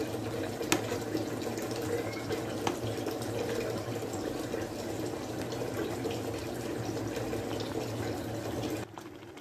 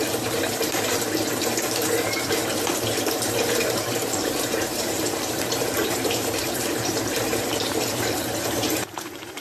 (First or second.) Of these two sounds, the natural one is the first